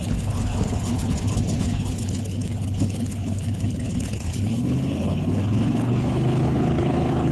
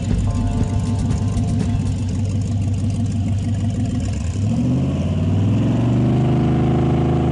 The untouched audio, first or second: second